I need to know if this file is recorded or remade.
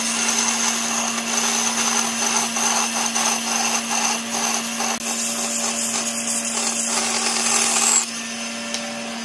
recorded